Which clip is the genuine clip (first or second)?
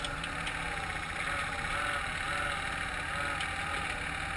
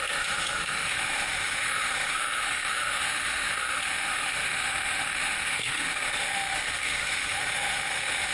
first